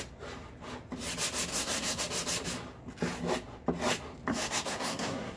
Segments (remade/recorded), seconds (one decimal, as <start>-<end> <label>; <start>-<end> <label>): 0.0-1.5 recorded; 1.5-2.0 remade; 2.0-4.3 recorded; 4.3-5.4 remade